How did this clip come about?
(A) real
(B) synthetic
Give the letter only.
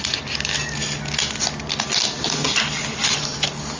A